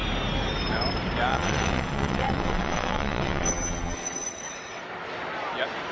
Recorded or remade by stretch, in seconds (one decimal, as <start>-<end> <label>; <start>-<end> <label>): 0.0-1.3 recorded; 1.3-4.8 remade; 4.8-5.9 recorded